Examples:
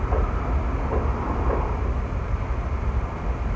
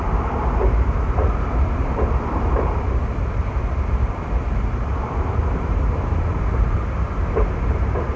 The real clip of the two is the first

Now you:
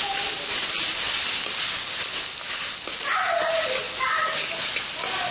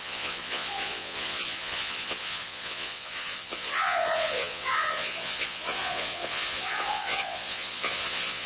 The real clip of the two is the first